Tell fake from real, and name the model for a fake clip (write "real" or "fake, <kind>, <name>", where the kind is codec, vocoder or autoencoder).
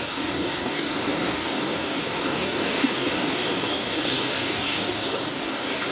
fake, codec, DAC